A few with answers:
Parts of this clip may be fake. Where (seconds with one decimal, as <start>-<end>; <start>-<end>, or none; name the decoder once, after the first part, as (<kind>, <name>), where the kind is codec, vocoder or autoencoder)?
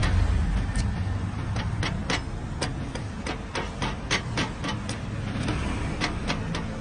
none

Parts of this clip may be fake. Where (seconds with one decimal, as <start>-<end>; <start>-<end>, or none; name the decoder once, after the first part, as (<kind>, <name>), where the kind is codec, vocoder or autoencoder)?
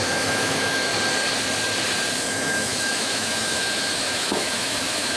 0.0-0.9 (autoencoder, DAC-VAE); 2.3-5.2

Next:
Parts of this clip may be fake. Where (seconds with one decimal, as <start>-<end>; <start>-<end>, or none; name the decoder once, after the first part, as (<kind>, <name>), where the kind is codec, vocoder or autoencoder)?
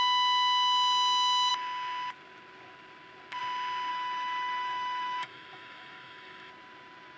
3.9-6.5 (autoencoder, DAC-VAE)